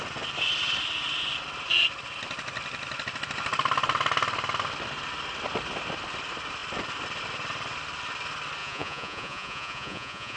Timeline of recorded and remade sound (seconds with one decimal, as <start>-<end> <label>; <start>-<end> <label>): 0.0-8.6 recorded; 8.6-10.4 remade